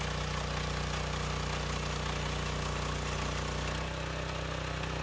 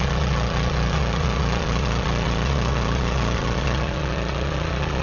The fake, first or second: second